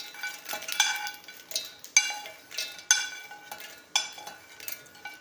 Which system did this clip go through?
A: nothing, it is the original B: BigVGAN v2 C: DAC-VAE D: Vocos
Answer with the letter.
A